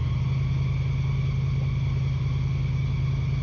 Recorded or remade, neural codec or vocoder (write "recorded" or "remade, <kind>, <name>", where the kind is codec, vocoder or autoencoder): recorded